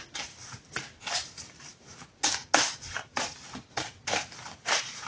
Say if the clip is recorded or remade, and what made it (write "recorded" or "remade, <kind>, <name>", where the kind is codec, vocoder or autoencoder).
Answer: recorded